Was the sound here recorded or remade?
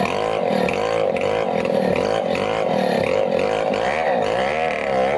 recorded